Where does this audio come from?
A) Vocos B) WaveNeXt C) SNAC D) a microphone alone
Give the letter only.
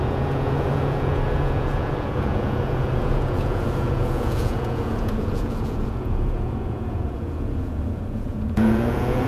A